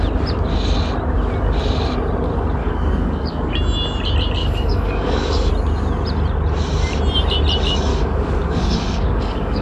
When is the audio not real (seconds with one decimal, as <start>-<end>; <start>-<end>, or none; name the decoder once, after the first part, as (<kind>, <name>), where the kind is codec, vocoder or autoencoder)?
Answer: 2.6-3.5 (codec, DAC); 4.4-5.5; 7.9-9.6